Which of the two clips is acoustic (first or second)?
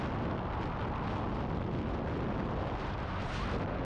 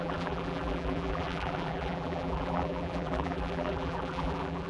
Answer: first